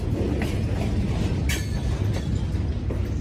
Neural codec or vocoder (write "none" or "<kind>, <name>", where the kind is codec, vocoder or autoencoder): none